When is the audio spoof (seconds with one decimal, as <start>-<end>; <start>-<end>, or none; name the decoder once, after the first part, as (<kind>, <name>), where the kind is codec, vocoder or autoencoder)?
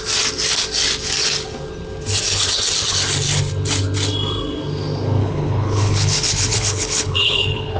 5.2-7.8 (codec, HILCodec)